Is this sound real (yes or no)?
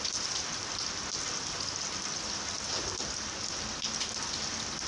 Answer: yes